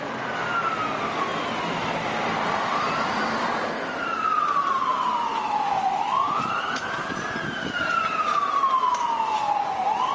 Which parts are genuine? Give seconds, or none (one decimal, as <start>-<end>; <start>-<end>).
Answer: 0.0-5.3; 7.1-10.1